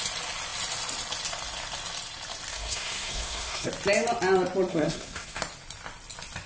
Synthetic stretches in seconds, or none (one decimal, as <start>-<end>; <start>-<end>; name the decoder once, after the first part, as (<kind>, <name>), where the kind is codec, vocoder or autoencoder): 2.5-3.7 (codec, SNAC); 4.7-5.4